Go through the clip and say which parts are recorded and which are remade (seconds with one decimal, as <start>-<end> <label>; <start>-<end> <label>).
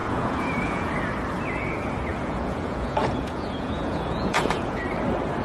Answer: 0.0-0.9 remade; 0.9-2.1 recorded; 2.1-4.8 remade; 4.8-5.4 recorded